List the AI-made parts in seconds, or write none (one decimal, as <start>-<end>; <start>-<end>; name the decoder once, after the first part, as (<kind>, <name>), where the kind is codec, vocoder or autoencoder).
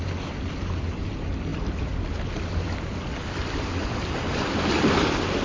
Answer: none